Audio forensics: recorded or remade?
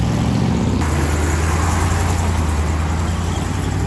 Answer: recorded